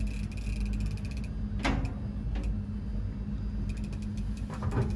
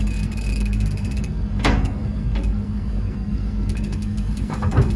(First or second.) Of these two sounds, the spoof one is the second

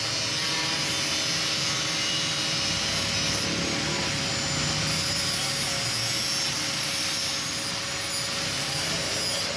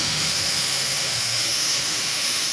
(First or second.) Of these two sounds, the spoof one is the second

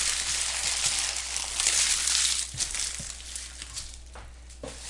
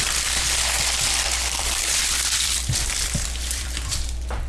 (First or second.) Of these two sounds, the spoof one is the second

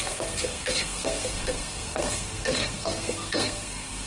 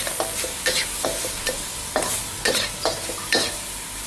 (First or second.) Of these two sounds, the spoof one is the first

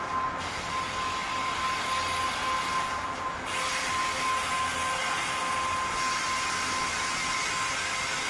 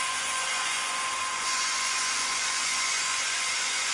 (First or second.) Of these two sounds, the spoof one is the second